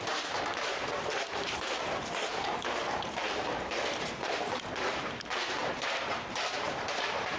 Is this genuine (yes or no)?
no